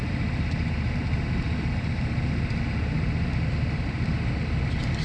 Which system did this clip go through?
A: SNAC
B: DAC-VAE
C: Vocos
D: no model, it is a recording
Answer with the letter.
D